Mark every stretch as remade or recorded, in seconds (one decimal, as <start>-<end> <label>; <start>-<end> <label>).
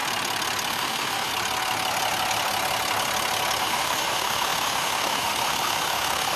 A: 0.0-0.7 recorded; 0.7-1.3 remade; 1.3-3.6 recorded; 3.6-6.4 remade